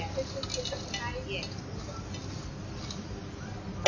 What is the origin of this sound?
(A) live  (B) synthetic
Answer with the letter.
A